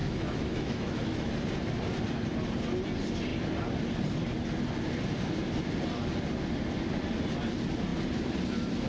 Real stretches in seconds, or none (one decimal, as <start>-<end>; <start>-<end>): 1.3-8.9